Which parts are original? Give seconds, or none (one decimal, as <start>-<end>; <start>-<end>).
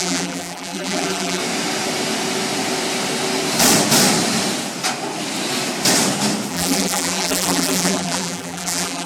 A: 1.4-6.5